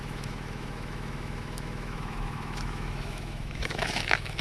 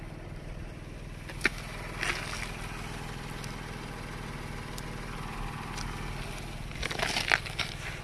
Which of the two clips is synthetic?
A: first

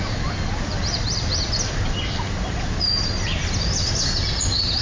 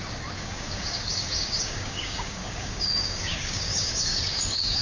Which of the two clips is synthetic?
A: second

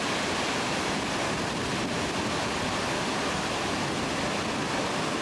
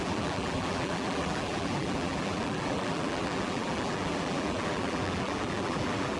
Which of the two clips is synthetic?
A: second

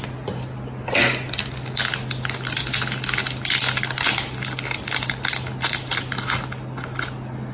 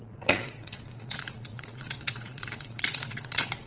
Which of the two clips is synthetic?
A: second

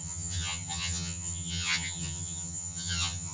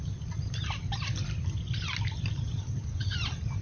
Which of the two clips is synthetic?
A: first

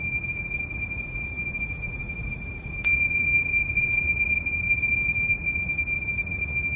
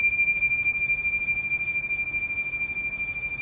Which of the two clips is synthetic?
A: first